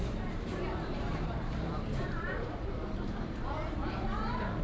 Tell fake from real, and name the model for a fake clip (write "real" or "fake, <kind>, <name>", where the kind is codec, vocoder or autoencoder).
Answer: fake, vocoder, BigVGAN v2